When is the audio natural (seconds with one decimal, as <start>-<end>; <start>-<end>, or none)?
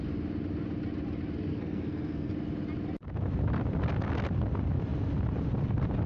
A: 0.0-1.5; 2.3-6.1